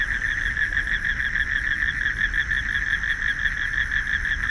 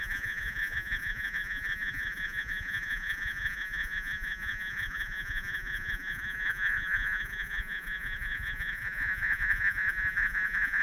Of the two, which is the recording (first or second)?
first